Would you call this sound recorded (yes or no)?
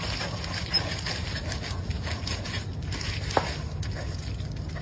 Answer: yes